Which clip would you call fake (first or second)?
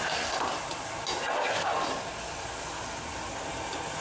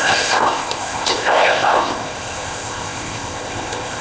second